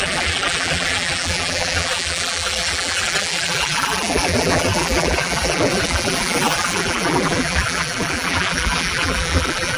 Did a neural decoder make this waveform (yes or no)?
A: yes